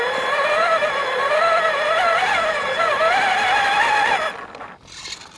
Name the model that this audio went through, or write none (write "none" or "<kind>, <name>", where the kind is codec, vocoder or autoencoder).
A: none